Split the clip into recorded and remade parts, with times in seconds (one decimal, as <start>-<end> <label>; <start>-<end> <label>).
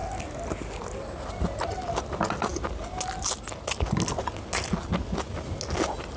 0.0-6.2 recorded